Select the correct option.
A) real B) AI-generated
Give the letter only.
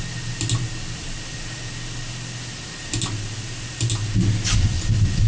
A